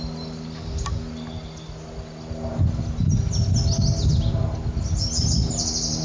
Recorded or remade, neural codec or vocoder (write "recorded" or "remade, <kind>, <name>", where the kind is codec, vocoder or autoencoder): recorded